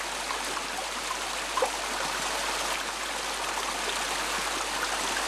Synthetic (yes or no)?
no